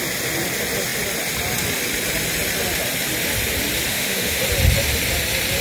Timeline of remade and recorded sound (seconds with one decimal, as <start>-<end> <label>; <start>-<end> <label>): 0.0-3.9 recorded; 3.9-4.4 remade; 4.4-5.6 recorded